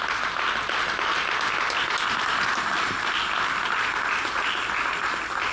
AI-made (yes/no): no